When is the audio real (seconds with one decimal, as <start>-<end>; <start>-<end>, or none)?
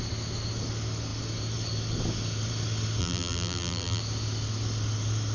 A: 0.0-3.0; 4.0-5.3